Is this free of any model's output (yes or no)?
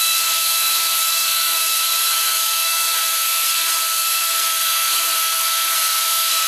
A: no